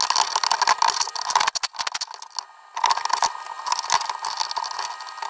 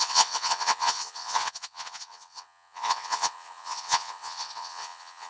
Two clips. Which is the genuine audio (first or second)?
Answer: first